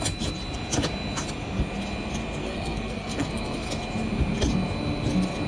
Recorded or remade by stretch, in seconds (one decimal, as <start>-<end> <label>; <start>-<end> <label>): 0.0-2.4 recorded; 2.4-3.7 remade; 3.7-5.5 recorded